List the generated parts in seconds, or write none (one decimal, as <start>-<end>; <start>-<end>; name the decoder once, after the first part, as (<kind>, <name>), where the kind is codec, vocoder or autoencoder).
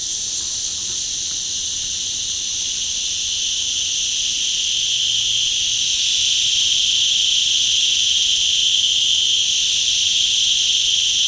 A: 1.6-2.9 (vocoder, BigVGAN v2); 8.6-9.6